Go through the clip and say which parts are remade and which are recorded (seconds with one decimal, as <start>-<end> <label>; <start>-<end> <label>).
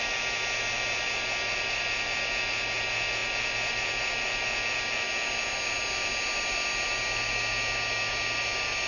0.0-8.9 recorded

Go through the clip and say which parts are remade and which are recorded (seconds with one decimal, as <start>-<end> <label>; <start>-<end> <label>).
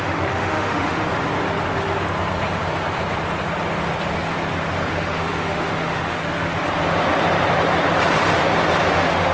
0.0-1.1 remade; 1.1-4.9 recorded; 4.9-6.2 remade; 6.2-8.9 recorded; 8.9-9.3 remade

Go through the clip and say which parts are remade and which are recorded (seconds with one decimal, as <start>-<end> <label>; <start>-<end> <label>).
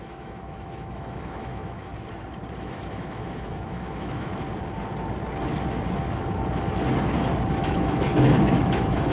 0.0-1.9 remade; 1.9-2.6 recorded; 2.6-4.3 remade; 4.3-7.5 recorded; 7.5-9.1 remade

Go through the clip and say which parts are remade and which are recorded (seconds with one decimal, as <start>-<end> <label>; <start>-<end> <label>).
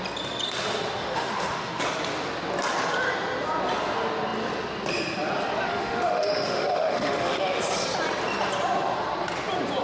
0.0-1.0 recorded; 1.0-1.8 remade; 1.8-5.7 recorded; 5.7-7.6 remade; 7.6-9.8 recorded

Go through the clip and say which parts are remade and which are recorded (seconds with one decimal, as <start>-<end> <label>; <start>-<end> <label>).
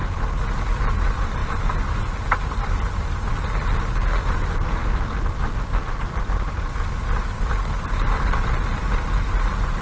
0.0-9.8 recorded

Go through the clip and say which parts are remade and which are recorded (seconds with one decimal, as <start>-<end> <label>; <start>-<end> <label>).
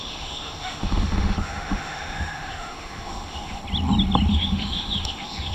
0.0-3.6 remade; 3.6-4.3 recorded; 4.3-5.5 remade